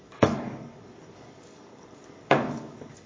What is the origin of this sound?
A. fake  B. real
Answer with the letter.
A